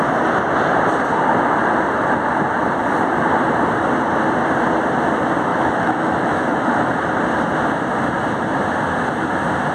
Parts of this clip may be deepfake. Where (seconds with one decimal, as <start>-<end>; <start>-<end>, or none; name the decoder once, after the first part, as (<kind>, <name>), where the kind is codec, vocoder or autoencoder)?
5.5-6.9 (autoencoder, DAC-VAE)